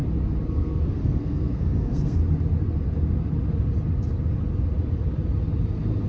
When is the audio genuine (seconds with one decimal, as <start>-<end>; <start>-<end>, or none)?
0.0-0.5; 2.2-6.1